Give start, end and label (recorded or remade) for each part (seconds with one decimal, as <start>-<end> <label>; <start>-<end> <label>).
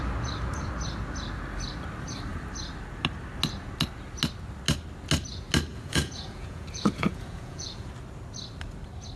0.0-5.7 recorded; 5.7-7.9 remade; 7.9-9.2 recorded